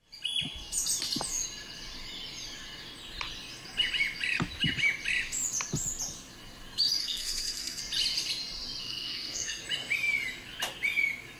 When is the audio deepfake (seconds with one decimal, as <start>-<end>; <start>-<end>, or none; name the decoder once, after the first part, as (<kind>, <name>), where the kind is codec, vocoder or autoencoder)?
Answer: 7.0-7.8 (codec, SNAC); 8.8-9.6